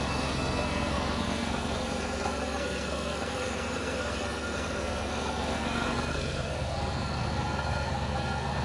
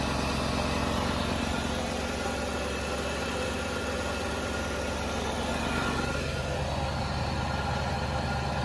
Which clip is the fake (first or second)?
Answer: first